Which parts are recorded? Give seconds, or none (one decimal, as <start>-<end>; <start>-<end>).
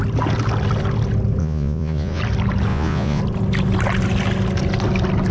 0.0-1.4; 2.2-2.7; 3.2-5.3